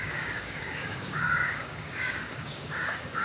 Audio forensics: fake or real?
fake